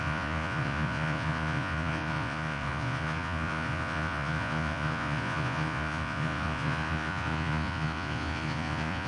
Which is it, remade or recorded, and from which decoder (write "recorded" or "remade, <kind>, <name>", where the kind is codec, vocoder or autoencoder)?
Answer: remade, vocoder, Vocos